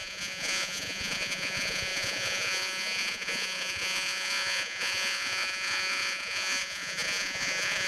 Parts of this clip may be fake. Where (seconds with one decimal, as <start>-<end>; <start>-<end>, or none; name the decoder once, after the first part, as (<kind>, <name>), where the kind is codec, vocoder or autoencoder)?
0.0-7.9 (vocoder, Vocos)